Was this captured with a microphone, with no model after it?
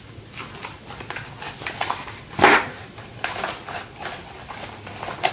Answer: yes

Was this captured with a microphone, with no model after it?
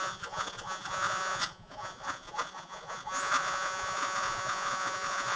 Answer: no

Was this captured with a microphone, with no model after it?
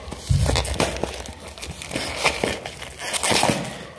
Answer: yes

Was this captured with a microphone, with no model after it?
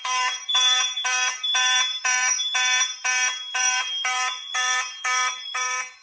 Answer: no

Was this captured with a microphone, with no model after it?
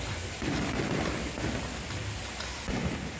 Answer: yes